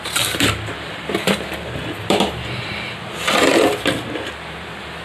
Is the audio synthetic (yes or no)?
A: yes